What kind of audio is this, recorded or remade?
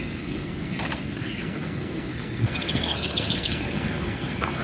remade